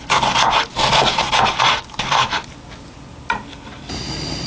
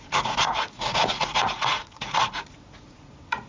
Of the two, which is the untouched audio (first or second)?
first